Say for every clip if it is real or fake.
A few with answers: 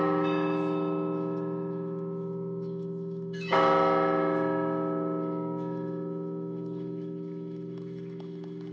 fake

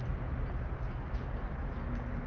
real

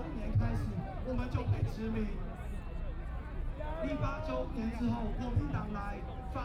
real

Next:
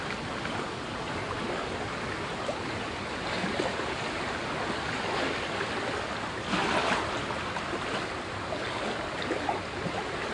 real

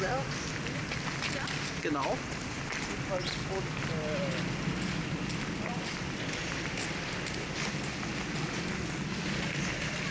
real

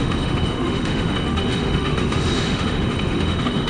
fake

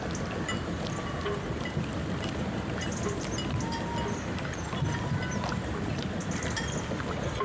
real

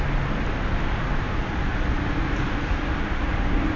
real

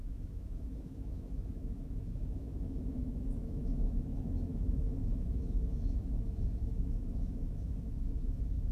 fake